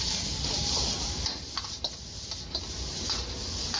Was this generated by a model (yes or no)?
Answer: no